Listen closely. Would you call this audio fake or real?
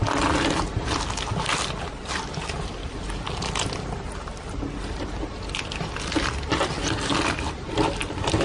real